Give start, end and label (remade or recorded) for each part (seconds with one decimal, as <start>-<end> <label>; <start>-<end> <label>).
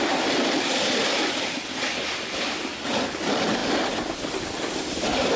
0.0-5.4 recorded